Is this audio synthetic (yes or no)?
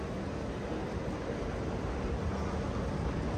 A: no